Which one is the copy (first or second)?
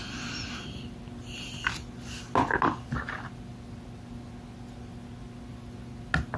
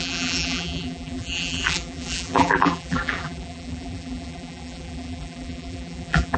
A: second